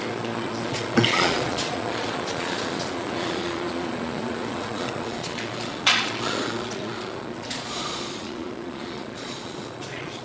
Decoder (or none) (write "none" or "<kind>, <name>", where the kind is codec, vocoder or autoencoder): vocoder, Vocos